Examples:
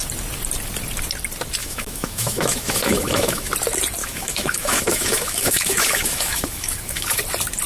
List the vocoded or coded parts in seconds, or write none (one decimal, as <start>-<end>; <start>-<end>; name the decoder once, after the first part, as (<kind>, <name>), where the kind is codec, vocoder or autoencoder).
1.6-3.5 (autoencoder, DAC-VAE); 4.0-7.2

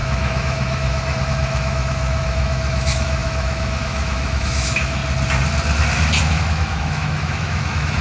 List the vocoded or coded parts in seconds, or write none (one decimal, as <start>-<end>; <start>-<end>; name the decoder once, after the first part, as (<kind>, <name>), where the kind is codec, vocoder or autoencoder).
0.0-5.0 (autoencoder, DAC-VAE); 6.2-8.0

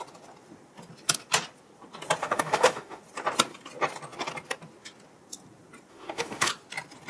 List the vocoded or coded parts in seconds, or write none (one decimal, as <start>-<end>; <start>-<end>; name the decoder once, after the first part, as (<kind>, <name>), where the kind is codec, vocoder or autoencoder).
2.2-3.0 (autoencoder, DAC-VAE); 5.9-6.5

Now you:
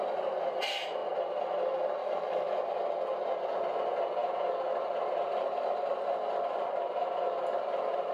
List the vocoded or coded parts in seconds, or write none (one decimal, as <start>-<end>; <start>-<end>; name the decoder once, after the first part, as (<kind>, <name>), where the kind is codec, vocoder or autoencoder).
2.0-2.6 (autoencoder, DAC-VAE)